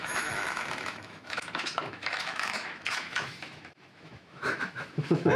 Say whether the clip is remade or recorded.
remade